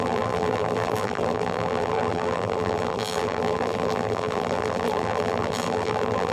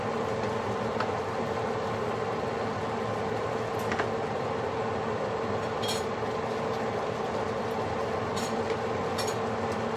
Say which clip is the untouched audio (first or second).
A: second